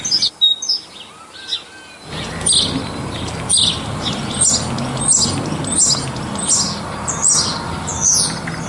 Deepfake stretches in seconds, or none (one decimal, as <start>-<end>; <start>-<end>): none